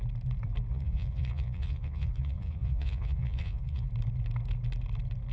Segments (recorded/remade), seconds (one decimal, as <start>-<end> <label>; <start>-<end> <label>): 0.0-0.7 recorded; 0.7-3.9 remade; 3.9-5.3 recorded